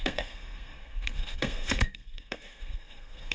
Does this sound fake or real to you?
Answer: fake